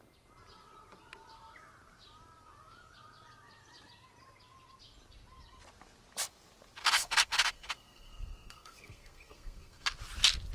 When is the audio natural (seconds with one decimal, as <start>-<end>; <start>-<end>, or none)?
0.0-6.8; 9.9-10.5